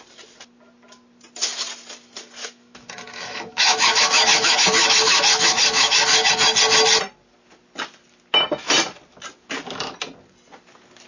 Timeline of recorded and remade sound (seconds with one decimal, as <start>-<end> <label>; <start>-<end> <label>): 0.0-2.4 recorded; 2.4-6.3 remade; 6.3-11.1 recorded